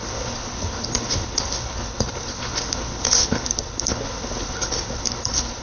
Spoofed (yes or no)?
yes